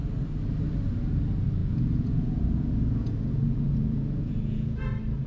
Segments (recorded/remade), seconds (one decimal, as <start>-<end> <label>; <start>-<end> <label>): 0.0-1.6 recorded; 1.6-4.8 remade; 4.8-5.3 recorded